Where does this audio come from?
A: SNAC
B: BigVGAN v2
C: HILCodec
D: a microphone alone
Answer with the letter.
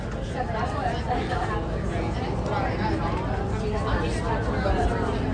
D